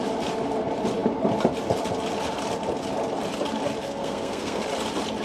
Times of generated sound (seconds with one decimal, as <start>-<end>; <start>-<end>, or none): 3.8-4.6